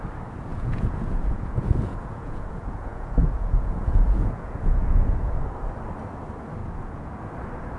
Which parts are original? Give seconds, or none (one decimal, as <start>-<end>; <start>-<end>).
0.0-0.5; 5.2-6.6; 7.2-7.8